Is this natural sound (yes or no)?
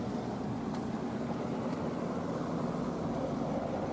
yes